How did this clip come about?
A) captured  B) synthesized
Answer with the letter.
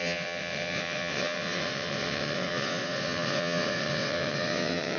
B